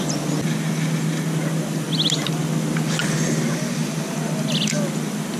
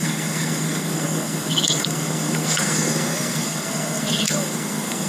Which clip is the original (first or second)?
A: first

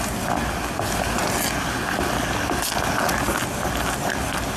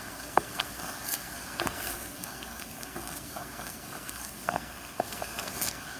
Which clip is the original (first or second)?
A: first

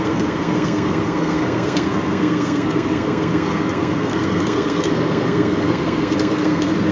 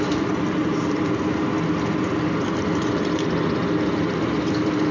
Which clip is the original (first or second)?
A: second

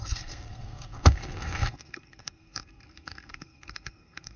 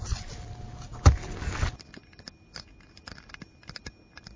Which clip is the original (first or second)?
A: second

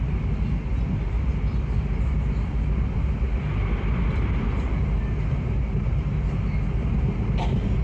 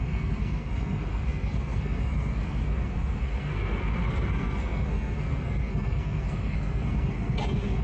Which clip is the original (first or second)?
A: first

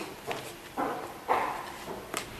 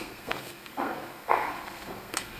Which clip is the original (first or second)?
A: first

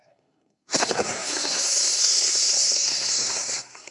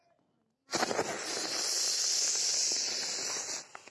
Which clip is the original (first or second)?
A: second